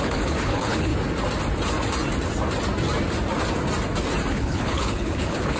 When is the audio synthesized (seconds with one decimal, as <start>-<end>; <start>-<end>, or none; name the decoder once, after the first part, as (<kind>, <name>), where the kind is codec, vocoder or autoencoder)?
0.0-0.9 (codec, HILCodec); 4.3-5.6